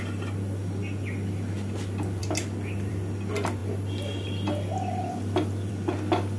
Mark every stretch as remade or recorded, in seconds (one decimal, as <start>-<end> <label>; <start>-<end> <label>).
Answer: 0.0-6.4 recorded